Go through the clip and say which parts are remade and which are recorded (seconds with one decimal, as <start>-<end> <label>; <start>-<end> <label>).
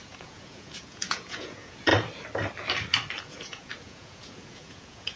0.0-1.9 remade; 1.9-3.2 recorded; 3.2-5.2 remade